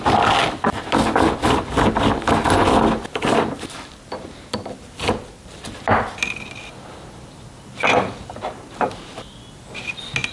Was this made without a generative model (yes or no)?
yes